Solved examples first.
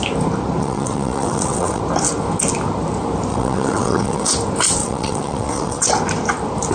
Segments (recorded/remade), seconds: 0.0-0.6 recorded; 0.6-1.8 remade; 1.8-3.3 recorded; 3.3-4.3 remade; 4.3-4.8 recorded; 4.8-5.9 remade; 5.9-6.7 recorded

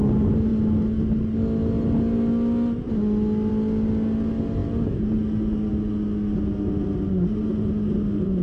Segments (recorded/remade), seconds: 0.0-8.4 recorded

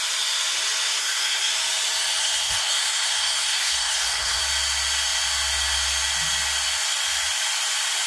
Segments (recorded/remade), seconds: 0.0-1.0 recorded; 1.0-1.5 remade; 1.5-2.2 recorded; 2.2-4.4 remade; 4.4-8.1 recorded

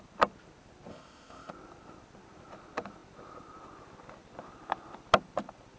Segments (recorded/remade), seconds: 0.0-0.9 recorded; 0.9-1.5 remade; 1.5-5.8 recorded